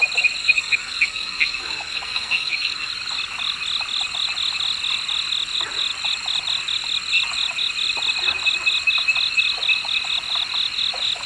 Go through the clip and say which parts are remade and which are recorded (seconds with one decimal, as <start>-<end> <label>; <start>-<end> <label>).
0.0-0.4 recorded; 0.4-2.9 remade; 2.9-11.3 recorded